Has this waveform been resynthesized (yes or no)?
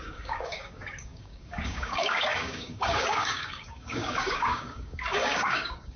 yes